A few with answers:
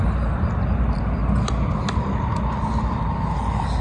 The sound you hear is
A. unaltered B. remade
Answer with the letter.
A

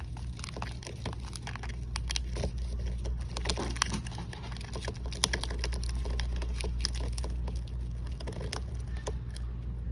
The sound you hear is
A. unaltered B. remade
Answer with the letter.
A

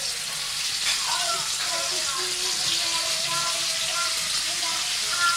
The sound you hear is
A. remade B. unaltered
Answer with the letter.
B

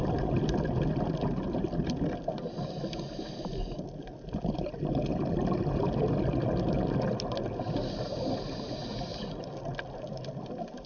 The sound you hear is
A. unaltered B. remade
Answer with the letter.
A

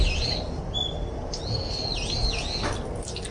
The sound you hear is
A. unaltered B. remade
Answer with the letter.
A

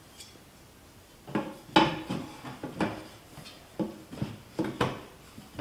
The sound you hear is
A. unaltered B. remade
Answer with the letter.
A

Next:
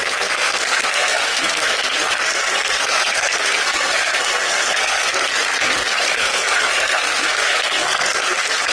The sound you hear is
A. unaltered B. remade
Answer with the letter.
B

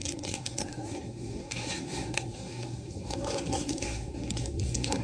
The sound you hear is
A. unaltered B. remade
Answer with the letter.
B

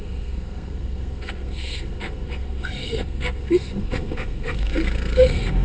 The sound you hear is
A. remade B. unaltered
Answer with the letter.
A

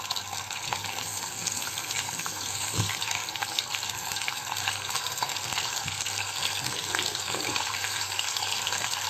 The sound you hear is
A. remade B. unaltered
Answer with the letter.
A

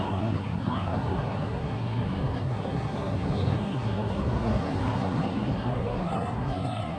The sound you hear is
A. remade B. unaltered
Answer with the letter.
A